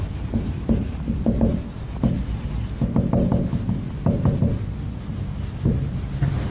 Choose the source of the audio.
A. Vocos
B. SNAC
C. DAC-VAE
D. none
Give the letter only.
D